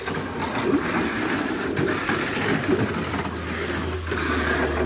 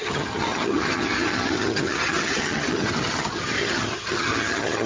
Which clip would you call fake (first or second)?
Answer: second